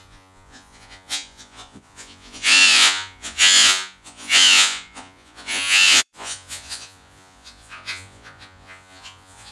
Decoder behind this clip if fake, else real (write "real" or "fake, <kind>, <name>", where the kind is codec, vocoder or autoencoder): fake, vocoder, Vocos